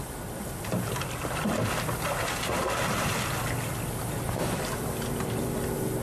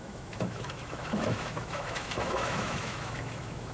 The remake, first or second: second